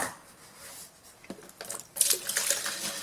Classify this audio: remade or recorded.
recorded